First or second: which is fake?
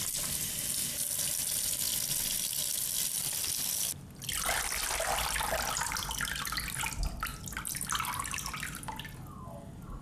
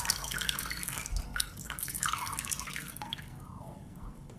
second